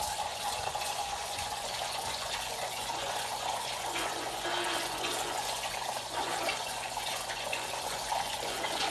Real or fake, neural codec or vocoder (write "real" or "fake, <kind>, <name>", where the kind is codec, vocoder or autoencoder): fake, vocoder, Vocos